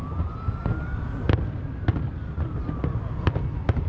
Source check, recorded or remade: recorded